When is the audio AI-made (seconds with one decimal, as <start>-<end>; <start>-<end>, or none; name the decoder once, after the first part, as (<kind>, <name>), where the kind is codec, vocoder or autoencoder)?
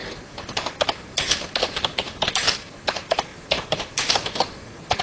none